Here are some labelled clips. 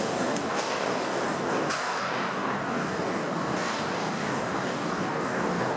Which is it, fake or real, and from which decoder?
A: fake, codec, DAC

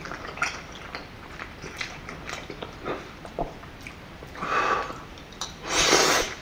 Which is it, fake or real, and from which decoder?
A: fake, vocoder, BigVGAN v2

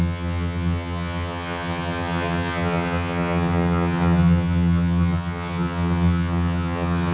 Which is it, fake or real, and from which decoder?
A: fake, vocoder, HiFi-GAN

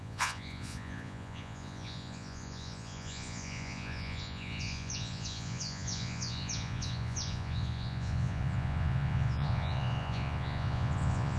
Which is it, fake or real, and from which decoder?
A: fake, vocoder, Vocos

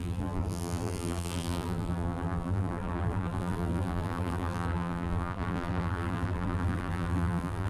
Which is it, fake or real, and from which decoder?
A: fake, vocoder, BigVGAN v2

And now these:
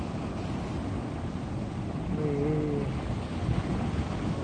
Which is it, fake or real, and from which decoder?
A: real